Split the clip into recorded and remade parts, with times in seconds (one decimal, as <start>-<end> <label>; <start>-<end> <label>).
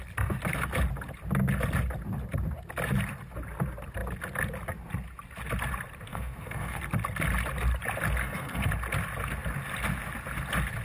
0.0-6.1 recorded; 6.1-6.8 remade; 6.8-8.2 recorded; 8.2-8.7 remade; 8.7-10.8 recorded